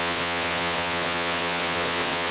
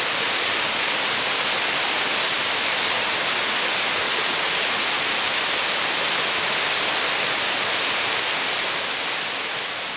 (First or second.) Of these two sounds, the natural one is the second